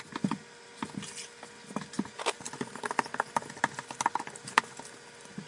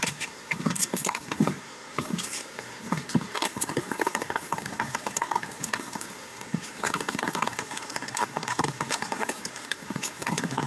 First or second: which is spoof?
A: second